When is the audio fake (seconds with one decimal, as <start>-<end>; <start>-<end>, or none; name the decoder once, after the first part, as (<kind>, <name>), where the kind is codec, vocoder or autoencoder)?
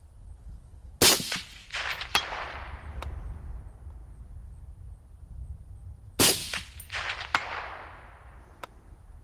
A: 1.6-3.6 (vocoder, BigVGAN v2)